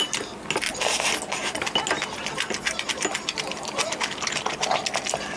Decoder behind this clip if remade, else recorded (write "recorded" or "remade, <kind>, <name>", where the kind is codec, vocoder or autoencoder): recorded